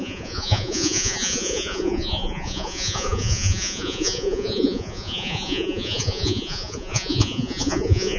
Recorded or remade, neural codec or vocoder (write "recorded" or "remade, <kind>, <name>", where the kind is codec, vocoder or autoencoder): remade, vocoder, Vocos